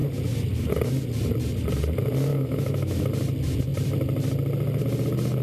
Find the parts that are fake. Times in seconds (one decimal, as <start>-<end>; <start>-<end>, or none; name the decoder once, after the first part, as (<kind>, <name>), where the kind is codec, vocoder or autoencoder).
2.3-3.0 (autoencoder, DAC-VAE)